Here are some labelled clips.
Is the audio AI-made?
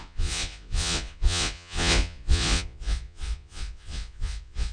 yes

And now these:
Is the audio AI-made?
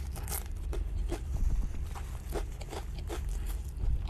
yes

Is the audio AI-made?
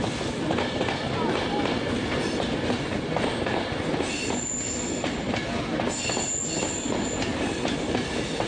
no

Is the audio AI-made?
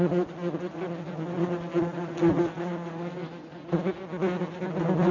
no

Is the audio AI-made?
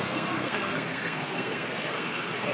yes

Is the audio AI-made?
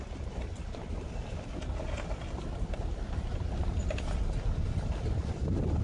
no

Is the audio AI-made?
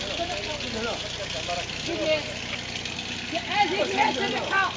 no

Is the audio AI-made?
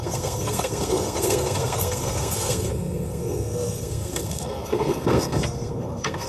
yes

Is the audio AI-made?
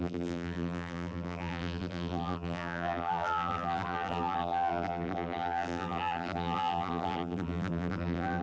yes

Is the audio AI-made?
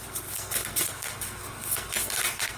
yes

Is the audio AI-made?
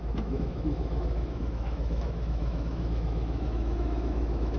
yes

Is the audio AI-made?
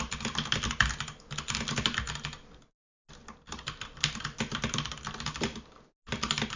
no